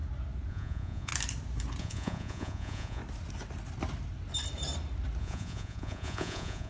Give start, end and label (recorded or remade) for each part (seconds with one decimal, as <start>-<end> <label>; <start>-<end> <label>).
0.0-0.5 recorded; 0.5-1.1 remade; 1.1-1.8 recorded; 1.8-3.0 remade; 3.0-5.2 recorded; 5.2-6.7 remade